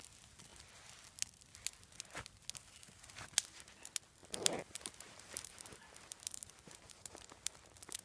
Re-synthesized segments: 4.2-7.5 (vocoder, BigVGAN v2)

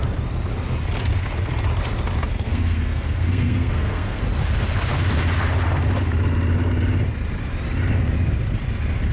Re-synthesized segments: 2.3-4.2 (codec, SNAC)

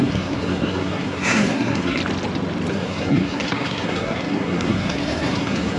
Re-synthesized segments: 0.0-2.0 (codec, SNAC); 2.7-5.8